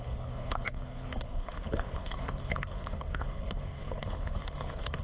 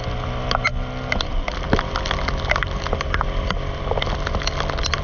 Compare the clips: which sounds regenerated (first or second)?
first